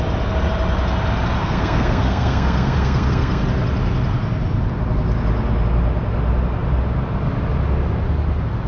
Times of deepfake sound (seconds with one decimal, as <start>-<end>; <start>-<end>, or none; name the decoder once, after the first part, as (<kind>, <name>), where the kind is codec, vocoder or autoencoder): 1.4-3.4 (codec, SNAC)